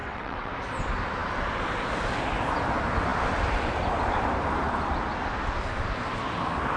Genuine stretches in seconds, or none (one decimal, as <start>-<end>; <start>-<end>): 0.5-6.8